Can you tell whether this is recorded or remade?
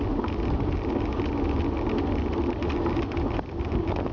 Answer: recorded